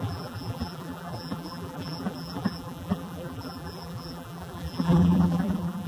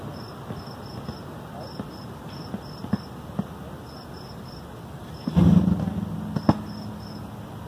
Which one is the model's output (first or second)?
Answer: first